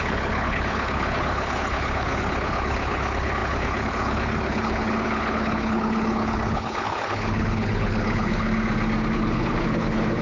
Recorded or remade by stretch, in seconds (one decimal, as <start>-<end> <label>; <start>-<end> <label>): 0.0-8.5 remade; 8.5-9.1 recorded; 9.1-10.2 remade